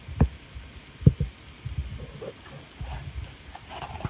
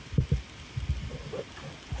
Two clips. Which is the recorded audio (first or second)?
first